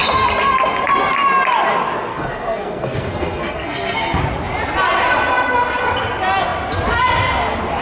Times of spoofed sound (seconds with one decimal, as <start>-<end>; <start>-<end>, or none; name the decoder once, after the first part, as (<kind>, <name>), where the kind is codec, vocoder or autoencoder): 2.1-4.2 (codec, SNAC)